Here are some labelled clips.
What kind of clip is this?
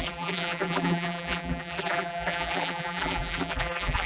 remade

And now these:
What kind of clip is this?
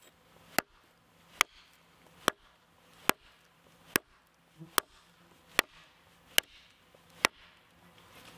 recorded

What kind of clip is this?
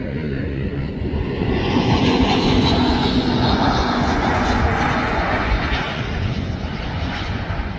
remade